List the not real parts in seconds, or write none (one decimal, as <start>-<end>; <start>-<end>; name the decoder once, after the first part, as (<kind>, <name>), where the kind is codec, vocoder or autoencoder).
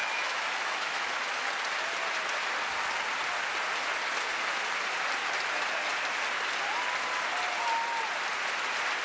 0.0-1.5 (autoencoder, DAC-VAE)